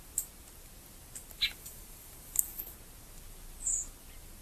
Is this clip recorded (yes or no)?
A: yes